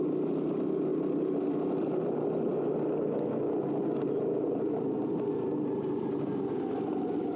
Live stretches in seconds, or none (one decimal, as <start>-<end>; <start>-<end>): 0.0-7.4